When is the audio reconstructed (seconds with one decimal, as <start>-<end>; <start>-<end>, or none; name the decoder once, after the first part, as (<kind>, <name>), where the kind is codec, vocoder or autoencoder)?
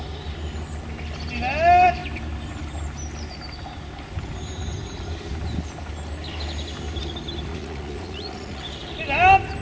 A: 7.5-8.6 (vocoder, Vocos)